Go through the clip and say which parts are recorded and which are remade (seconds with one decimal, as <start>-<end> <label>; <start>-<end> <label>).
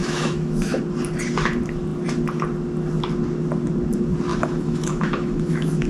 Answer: 0.0-0.8 remade; 0.8-4.3 recorded; 4.3-5.9 remade